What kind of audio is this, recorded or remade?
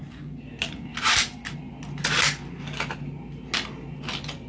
recorded